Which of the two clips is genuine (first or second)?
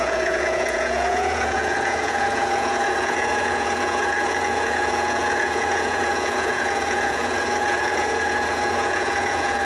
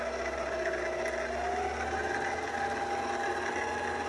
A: second